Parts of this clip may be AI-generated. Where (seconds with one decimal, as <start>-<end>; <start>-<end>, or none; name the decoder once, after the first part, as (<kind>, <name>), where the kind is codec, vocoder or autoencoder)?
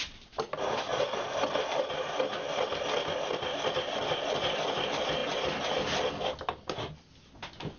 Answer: none